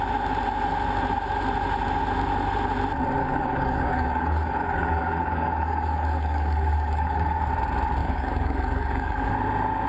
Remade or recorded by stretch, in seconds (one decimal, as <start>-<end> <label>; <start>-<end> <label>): 0.0-3.2 recorded; 3.2-7.5 remade; 7.5-8.0 recorded; 8.0-9.3 remade; 9.3-9.9 recorded